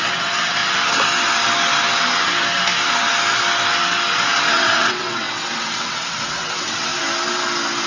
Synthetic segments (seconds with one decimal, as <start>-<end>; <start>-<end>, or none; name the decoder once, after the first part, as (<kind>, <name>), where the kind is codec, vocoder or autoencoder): 0.0-0.6 (vocoder, WaveNeXt); 4.5-6.9